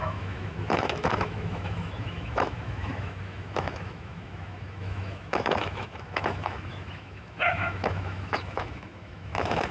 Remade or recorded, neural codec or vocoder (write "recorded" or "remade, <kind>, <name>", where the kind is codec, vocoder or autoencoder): remade, autoencoder, DAC-VAE